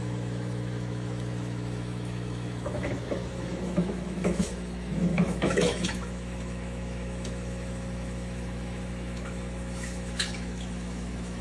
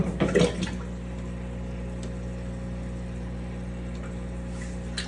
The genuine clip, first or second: second